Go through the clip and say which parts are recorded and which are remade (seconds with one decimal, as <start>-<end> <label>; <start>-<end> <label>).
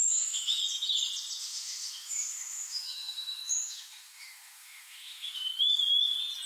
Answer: 0.0-0.6 remade; 0.6-1.4 recorded; 1.4-5.5 remade; 5.5-6.5 recorded